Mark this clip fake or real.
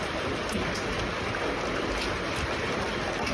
real